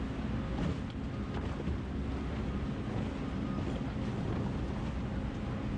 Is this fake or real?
real